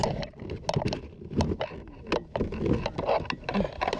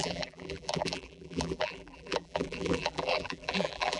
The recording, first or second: first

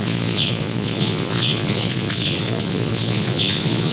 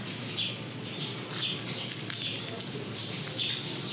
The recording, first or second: second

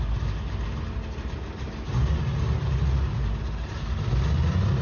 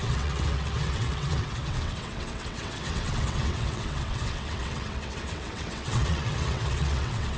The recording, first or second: first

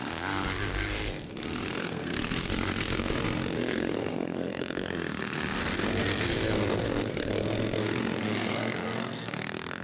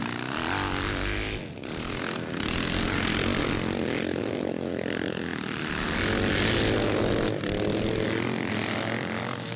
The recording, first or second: second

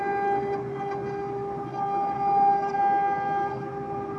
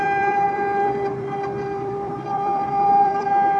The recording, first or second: first